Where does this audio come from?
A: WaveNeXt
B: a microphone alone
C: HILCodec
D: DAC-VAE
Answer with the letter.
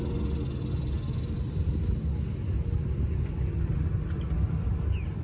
B